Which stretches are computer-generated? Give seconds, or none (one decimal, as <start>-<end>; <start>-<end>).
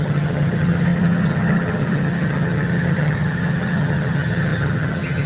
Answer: 0.0-5.3